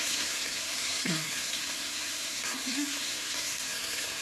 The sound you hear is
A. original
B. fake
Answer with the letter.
B